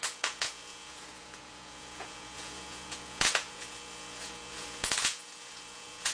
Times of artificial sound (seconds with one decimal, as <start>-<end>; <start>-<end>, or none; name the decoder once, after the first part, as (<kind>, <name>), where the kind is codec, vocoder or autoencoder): 0.0-6.1 (vocoder, Vocos)